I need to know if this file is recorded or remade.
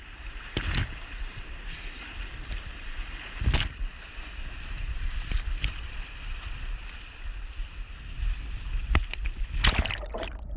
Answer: recorded